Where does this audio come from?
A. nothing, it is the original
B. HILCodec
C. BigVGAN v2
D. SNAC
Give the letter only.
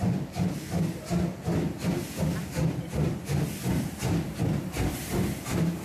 C